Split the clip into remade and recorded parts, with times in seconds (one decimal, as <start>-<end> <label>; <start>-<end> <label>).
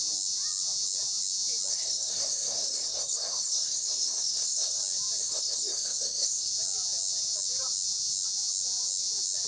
0.0-1.7 recorded; 1.7-4.8 remade; 4.8-5.2 recorded; 5.2-6.5 remade; 6.5-9.5 recorded